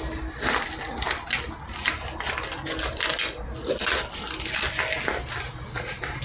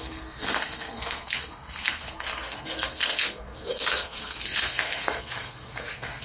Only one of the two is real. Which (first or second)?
first